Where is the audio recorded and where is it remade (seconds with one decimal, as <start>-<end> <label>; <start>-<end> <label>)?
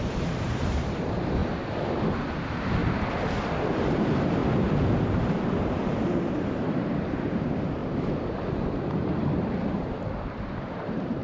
0.0-1.4 remade; 1.4-2.3 recorded; 2.3-2.8 remade; 2.8-3.4 recorded; 3.4-4.4 remade; 4.4-5.1 recorded; 5.1-7.8 remade; 7.8-9.5 recorded; 9.5-11.2 remade